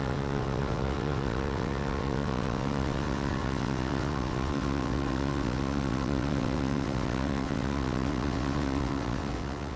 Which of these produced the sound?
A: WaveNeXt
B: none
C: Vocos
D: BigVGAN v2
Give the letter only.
A